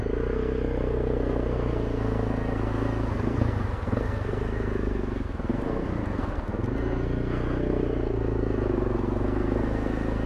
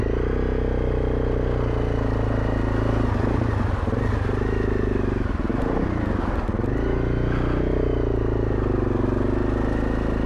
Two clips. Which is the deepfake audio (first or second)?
first